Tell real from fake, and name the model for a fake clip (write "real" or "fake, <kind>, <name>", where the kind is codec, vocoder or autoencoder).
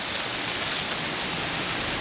real